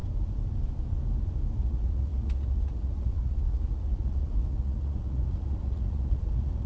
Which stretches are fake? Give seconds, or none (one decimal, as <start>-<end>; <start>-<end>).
1.6-6.7